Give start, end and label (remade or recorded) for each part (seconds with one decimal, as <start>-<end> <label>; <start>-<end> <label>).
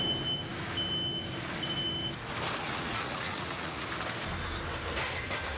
0.0-2.6 recorded; 2.6-3.9 remade; 3.9-5.6 recorded